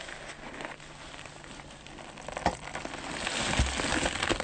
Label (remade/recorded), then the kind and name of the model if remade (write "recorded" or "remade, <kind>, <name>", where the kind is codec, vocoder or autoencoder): recorded